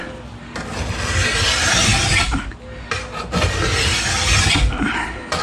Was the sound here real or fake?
real